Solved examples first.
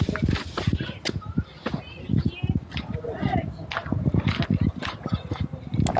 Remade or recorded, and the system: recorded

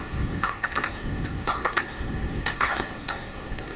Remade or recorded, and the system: remade, codec, SNAC